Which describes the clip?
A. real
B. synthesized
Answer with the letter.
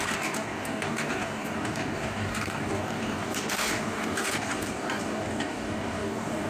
B